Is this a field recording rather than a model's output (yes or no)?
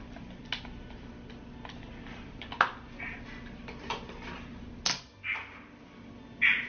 yes